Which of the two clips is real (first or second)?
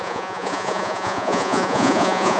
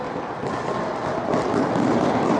second